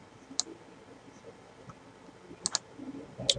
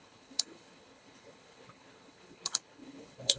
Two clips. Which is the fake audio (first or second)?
second